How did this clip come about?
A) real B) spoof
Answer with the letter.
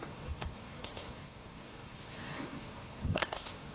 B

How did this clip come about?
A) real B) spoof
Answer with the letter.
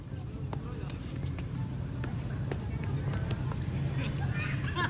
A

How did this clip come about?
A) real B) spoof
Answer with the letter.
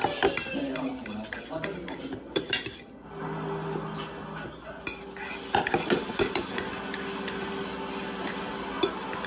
A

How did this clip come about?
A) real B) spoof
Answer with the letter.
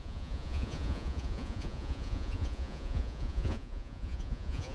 B